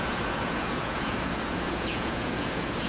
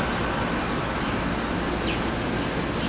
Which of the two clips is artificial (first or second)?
first